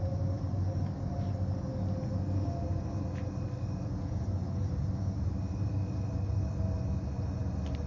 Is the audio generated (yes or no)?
no